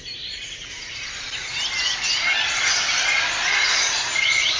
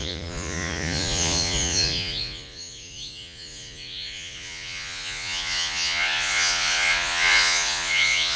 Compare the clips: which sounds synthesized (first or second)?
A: second